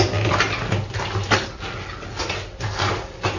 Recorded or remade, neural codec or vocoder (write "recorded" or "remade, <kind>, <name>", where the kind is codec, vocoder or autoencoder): recorded